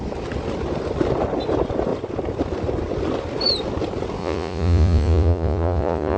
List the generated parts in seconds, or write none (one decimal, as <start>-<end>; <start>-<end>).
4.2-6.2